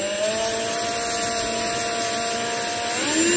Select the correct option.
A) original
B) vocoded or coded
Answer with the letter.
A